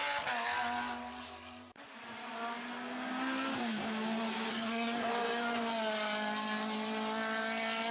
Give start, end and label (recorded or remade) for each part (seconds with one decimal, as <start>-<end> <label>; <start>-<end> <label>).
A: 0.0-4.5 recorded; 4.5-5.1 remade; 5.1-7.9 recorded